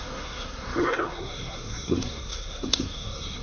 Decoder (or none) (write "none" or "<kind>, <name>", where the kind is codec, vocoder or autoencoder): codec, SNAC